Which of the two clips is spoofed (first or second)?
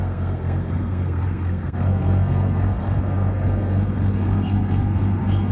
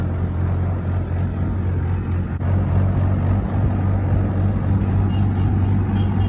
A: first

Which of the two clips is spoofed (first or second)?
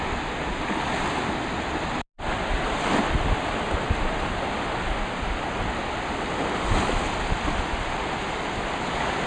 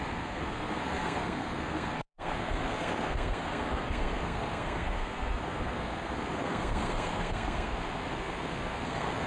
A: second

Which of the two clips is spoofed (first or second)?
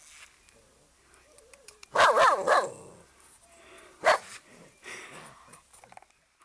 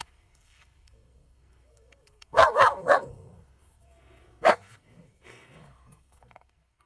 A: second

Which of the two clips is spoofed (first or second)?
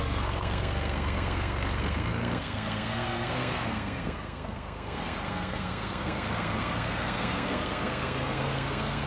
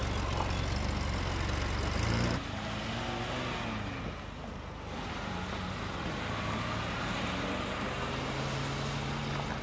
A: first